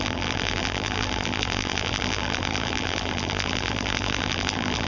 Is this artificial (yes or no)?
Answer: yes